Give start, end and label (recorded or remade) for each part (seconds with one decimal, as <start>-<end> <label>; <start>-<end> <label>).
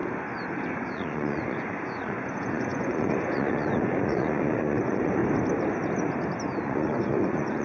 0.0-0.7 recorded; 0.7-5.2 remade; 5.2-6.6 recorded; 6.6-7.6 remade